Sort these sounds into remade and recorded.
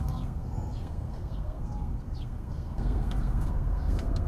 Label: remade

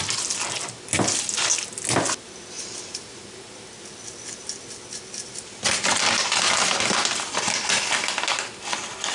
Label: recorded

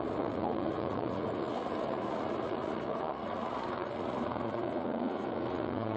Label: remade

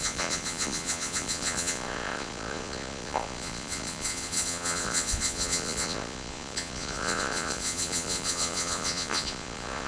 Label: remade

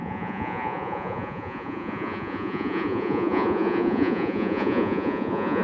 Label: remade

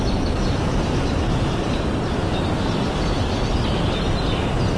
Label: recorded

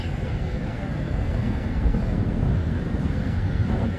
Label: remade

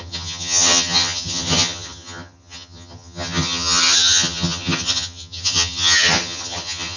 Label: remade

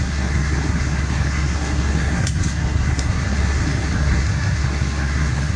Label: remade